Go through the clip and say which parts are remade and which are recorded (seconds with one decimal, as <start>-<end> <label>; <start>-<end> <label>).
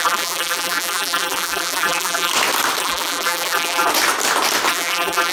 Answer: 0.0-2.3 remade; 2.3-2.8 recorded; 2.8-3.9 remade; 3.9-4.7 recorded; 4.7-5.3 remade